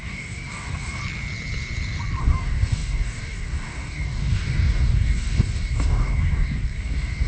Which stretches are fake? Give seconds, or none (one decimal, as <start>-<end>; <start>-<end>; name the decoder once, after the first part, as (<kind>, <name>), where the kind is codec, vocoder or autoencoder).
0.0-1.0 (codec, DAC); 2.2-7.3

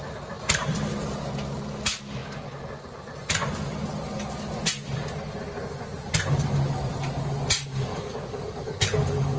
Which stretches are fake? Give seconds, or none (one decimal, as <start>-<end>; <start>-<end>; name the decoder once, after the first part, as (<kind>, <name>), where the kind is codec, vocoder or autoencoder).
7.7-9.4 (codec, DAC)

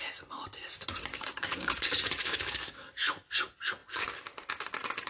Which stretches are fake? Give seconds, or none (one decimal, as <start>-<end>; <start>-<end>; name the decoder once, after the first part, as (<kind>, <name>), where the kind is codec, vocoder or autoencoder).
1.1-1.8 (codec, DAC); 2.2-2.9

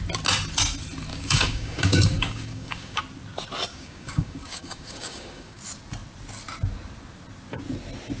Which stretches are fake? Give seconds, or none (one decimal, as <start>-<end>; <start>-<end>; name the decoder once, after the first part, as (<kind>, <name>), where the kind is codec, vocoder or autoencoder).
1.1-3.0 (codec, DAC); 3.7-5.6

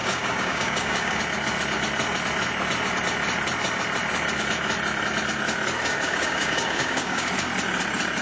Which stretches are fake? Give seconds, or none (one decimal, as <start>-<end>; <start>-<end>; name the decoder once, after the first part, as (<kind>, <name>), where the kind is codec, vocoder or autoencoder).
0.0-1.2 (codec, DAC); 5.9-7.3

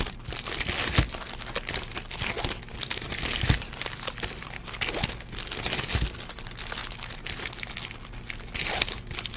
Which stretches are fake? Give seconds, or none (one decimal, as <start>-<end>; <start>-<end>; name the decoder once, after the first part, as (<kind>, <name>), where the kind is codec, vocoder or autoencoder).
none